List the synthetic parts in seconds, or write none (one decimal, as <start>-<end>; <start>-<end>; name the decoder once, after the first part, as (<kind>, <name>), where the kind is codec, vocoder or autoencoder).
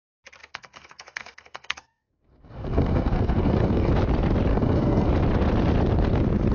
0.4-3.9 (codec, SNAC); 4.5-5.1